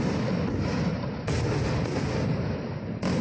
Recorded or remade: recorded